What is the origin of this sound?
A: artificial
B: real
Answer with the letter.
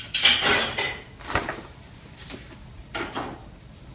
B